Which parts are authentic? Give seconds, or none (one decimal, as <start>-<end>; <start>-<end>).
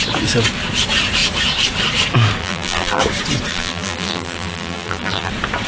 0.0-2.4; 3.0-3.5; 5.3-5.7